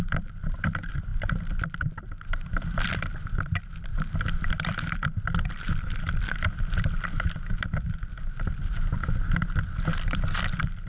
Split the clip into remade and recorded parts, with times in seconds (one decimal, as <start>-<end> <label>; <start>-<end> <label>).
0.0-3.9 remade; 3.9-4.5 recorded; 4.5-9.9 remade; 9.9-10.5 recorded; 10.5-10.9 remade